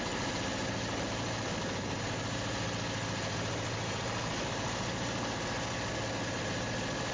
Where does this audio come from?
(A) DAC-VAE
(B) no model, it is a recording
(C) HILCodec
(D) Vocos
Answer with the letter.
B